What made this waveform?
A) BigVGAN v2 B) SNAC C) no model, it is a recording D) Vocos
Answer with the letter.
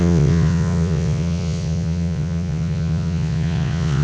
D